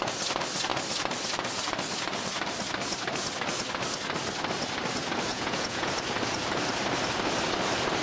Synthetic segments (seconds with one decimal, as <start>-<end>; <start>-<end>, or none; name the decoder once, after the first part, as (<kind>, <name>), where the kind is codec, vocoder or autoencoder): 5.3-5.9 (vocoder, Vocos)